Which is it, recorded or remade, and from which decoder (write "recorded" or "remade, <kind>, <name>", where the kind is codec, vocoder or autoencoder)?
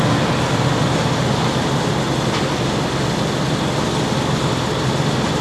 recorded